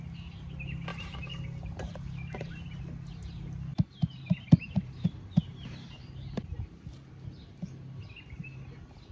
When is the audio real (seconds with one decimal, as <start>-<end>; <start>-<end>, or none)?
0.0-0.9; 2.8-3.7; 6.9-9.1